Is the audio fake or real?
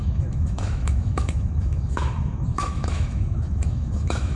fake